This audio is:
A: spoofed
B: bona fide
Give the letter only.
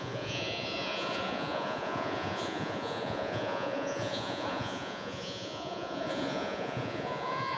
A